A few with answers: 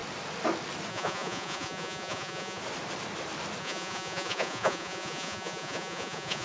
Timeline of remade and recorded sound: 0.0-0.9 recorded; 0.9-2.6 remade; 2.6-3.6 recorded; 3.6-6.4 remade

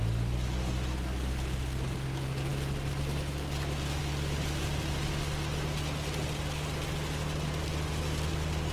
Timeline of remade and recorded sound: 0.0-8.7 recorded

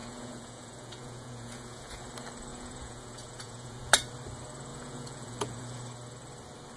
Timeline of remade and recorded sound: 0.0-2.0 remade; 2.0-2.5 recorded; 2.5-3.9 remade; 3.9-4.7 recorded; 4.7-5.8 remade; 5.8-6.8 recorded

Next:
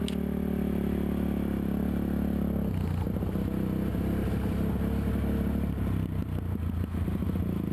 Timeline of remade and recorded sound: 0.0-3.9 recorded; 3.9-5.1 remade; 5.1-6.2 recorded; 6.2-7.3 remade; 7.3-7.7 recorded

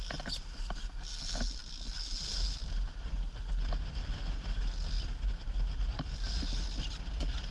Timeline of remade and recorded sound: 0.0-7.5 recorded